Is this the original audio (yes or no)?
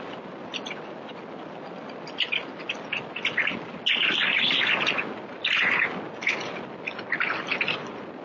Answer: yes